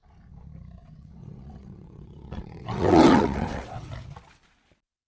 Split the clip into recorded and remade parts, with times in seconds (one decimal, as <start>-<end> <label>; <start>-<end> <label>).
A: 0.0-0.8 recorded; 0.8-3.9 remade; 3.9-5.1 recorded